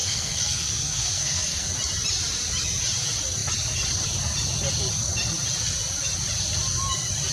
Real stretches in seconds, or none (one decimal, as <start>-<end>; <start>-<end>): 1.7-7.3